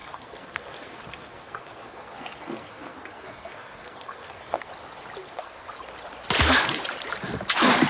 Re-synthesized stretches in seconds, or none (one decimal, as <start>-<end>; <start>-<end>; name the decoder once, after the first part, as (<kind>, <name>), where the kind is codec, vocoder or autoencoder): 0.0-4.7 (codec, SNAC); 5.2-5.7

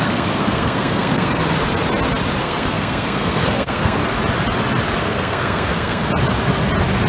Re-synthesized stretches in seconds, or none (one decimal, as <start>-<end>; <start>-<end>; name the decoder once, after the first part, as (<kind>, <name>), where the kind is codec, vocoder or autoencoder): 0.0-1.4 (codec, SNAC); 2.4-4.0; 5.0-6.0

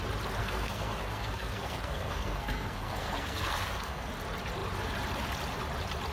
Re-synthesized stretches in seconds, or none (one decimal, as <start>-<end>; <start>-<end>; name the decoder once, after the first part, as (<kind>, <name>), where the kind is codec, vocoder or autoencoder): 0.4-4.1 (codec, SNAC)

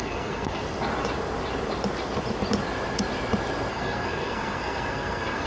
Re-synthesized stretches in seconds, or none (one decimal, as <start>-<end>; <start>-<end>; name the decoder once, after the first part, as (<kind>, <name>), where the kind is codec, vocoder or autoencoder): 0.0-0.6 (codec, SNAC); 3.7-5.5

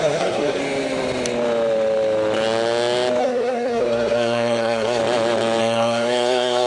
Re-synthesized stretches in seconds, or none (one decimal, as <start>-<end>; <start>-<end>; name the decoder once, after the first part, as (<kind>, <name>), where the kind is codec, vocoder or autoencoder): 0.0-0.6 (codec, SNAC); 3.2-5.0; 5.6-6.7